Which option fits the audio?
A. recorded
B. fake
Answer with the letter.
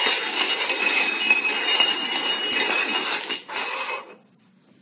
A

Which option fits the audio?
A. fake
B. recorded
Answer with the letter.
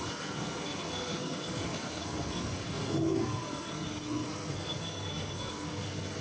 A